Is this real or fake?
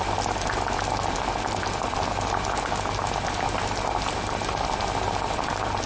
real